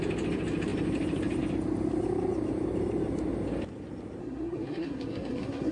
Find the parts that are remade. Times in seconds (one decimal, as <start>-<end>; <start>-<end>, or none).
4.2-5.7